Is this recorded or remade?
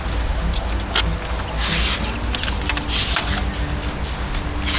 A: recorded